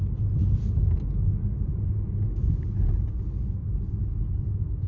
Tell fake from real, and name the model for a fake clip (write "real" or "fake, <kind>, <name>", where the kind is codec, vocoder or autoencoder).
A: real